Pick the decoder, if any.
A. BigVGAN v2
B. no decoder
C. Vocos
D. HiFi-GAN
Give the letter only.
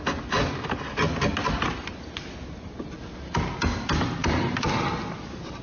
B